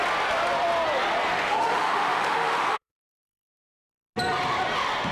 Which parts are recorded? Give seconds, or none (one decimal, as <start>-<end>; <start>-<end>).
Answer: 0.0-1.3; 3.9-5.1